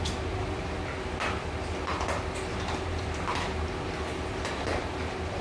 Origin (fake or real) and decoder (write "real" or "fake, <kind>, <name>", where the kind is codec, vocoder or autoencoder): real